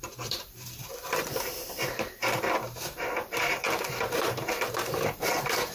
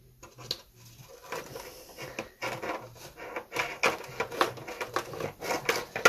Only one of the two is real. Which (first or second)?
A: second